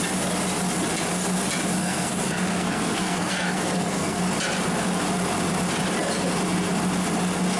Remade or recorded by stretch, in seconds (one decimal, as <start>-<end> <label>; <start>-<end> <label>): 0.0-1.8 recorded; 1.8-4.2 remade; 4.2-7.6 recorded

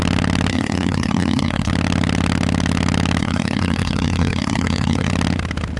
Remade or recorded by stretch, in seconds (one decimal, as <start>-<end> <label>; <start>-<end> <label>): 0.0-0.5 recorded; 0.5-1.7 remade; 1.7-3.2 recorded; 3.2-5.1 remade; 5.1-5.8 recorded